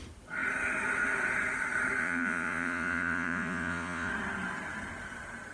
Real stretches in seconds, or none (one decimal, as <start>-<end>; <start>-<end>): 0.0-2.0; 4.1-5.5